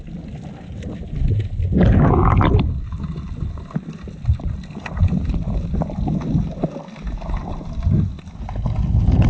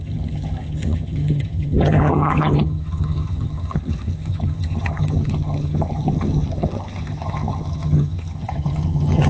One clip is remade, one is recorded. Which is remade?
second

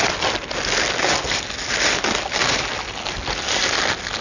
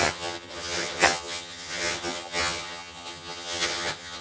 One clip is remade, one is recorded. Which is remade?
second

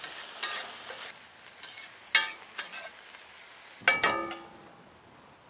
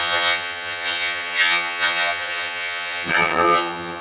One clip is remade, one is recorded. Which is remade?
second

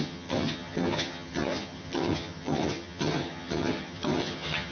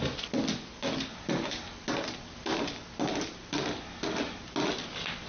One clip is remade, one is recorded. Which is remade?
first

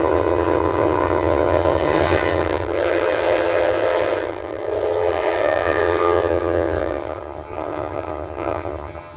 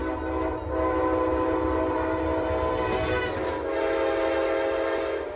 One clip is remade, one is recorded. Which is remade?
first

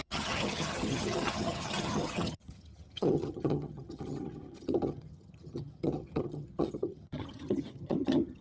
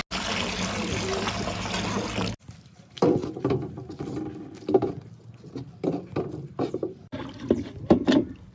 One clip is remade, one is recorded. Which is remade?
first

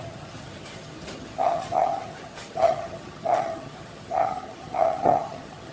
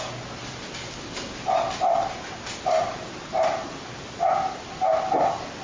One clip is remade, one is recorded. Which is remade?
first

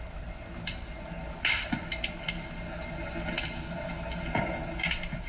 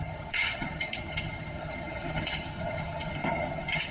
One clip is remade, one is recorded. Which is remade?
second